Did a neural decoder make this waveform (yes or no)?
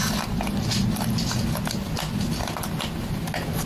no